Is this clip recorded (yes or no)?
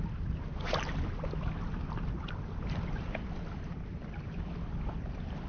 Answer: yes